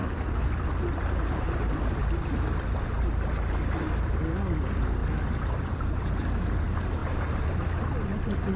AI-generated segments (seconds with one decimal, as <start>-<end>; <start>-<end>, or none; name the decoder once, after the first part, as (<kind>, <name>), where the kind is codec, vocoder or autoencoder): 5.0-6.1 (vocoder, BigVGAN v2)